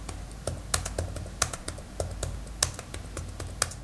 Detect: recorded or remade recorded